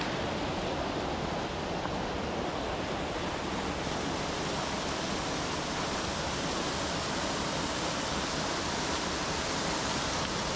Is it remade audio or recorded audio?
recorded